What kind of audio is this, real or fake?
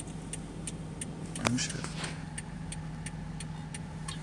real